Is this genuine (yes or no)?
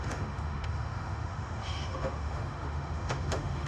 no